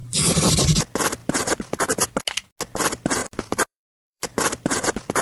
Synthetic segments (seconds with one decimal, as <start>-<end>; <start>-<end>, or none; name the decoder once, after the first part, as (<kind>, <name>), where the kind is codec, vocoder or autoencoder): 1.2-2.0 (vocoder, BigVGAN v2); 3.2-4.4